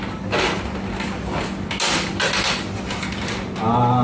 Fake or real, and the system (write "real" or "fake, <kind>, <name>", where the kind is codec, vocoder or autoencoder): real